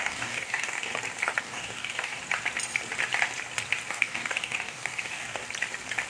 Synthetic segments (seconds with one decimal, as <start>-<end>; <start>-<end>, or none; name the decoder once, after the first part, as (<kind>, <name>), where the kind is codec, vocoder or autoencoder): 0.0-0.9 (codec, DAC); 1.4-2.2; 3.9-5.4